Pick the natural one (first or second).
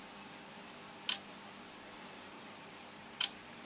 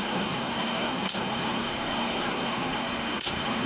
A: first